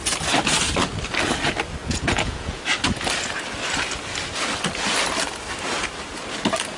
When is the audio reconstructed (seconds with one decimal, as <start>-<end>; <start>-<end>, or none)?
1.8-2.6